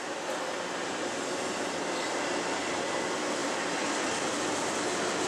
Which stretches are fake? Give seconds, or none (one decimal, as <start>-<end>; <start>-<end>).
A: none